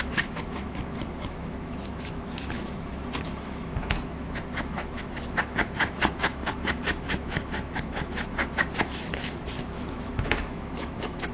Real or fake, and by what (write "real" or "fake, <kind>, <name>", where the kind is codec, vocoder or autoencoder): fake, autoencoder, DAC-VAE